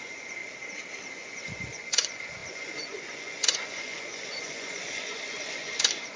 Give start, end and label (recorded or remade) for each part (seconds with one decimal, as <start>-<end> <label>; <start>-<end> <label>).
0.0-0.4 remade; 0.4-1.1 recorded; 1.1-6.2 remade

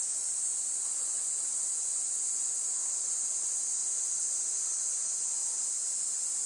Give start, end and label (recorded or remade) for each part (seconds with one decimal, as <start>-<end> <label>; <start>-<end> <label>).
0.0-3.8 remade; 3.8-4.4 recorded; 4.4-5.4 remade; 5.4-6.5 recorded